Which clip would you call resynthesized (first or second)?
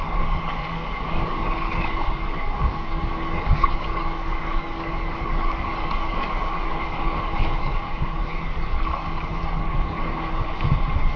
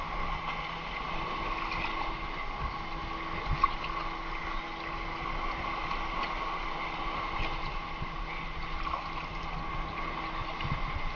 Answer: first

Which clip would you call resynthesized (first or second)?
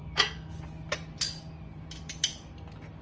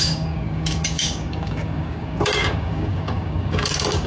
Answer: second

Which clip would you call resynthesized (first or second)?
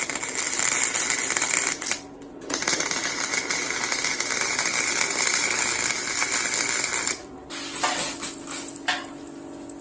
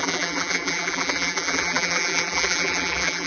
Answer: second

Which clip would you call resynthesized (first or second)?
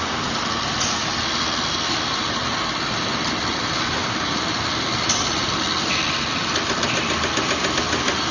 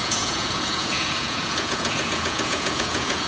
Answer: second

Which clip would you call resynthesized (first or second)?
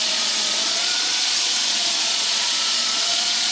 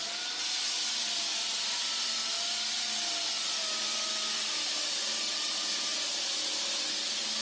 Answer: first